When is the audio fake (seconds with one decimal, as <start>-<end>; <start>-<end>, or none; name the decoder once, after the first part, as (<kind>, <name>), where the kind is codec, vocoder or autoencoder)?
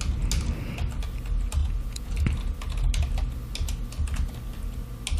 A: 1.6-2.1 (vocoder, Vocos)